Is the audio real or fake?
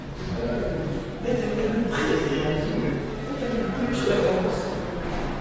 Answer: real